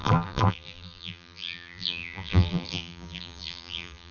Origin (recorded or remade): remade